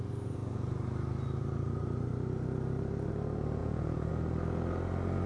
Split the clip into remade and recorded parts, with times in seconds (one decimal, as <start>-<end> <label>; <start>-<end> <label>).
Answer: 0.0-3.6 recorded; 3.6-4.1 remade; 4.1-5.3 recorded